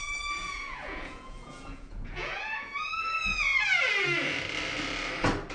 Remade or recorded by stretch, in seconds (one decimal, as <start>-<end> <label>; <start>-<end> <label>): 0.0-3.5 remade; 3.5-5.5 recorded